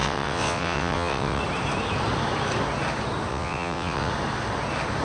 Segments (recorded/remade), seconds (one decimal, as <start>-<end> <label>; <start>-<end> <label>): 0.0-1.4 remade; 1.4-3.3 recorded; 3.3-4.1 remade; 4.1-5.0 recorded